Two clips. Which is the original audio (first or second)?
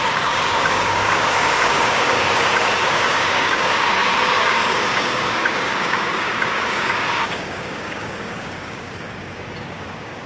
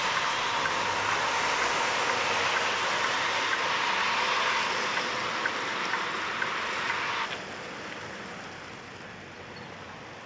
second